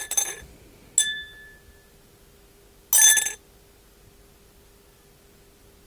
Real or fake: real